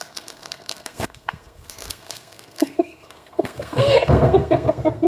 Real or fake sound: fake